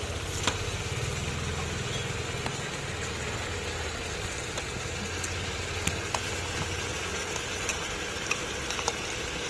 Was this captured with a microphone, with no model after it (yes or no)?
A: yes